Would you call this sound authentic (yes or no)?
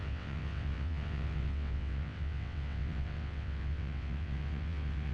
no